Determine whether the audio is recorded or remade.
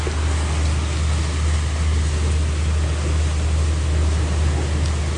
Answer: recorded